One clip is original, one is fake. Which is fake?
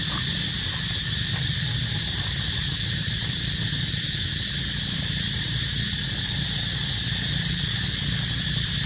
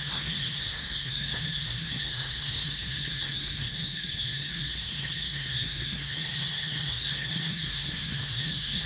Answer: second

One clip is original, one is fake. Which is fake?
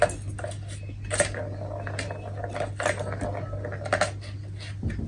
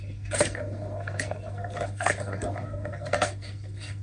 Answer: second